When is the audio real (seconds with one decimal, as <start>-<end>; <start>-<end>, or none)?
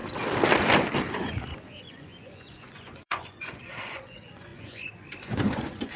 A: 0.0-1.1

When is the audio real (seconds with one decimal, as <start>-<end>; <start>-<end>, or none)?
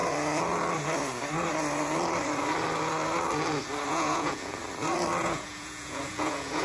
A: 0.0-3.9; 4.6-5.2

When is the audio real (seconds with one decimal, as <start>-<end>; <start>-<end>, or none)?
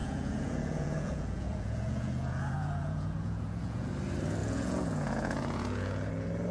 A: 3.9-4.4; 6.1-6.5